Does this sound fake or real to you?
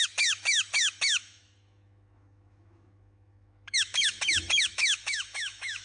fake